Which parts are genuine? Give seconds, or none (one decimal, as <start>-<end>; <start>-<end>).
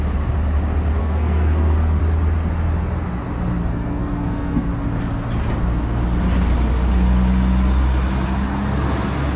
0.0-1.0; 2.0-3.6; 4.7-9.4